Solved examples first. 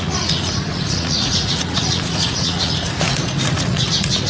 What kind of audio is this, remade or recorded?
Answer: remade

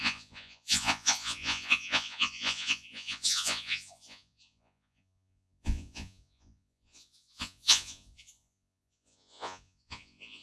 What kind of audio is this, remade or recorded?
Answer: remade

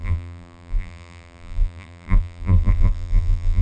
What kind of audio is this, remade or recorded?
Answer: remade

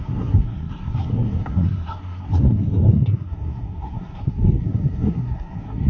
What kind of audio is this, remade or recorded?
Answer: remade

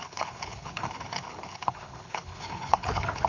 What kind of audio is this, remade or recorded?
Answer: remade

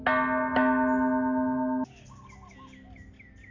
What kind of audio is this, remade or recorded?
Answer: recorded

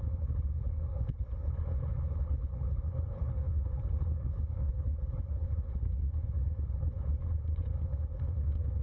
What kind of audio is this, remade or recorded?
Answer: remade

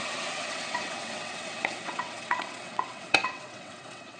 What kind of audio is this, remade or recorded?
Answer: remade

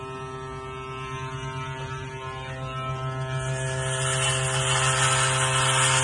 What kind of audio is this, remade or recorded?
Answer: recorded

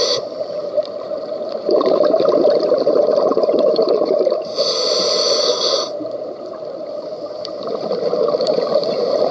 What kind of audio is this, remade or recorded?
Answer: remade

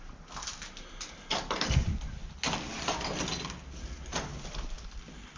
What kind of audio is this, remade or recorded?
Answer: recorded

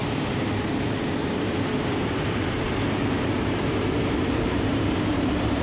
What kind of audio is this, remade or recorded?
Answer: remade